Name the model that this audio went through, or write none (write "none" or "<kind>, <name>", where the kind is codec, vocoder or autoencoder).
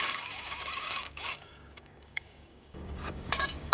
codec, DAC